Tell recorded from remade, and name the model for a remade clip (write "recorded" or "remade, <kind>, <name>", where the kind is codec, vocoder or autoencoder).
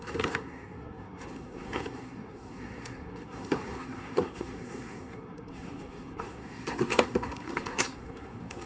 remade, codec, SNAC